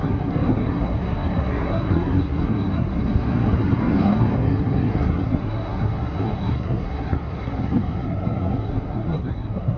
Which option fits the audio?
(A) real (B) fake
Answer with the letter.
B